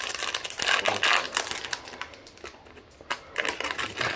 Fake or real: real